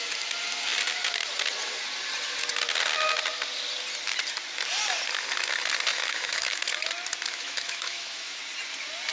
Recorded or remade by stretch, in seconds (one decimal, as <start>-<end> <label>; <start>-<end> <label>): 0.0-5.9 recorded; 5.9-6.7 remade; 6.7-7.3 recorded; 7.3-8.4 remade; 8.4-9.1 recorded